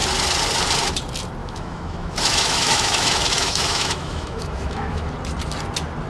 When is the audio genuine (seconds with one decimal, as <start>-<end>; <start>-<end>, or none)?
0.0-1.4; 5.1-6.1